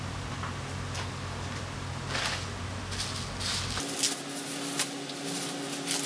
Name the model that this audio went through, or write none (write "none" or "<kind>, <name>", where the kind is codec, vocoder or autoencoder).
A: none